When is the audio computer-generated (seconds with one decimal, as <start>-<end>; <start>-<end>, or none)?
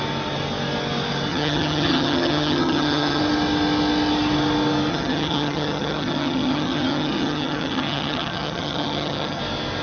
1.3-3.2; 4.9-9.4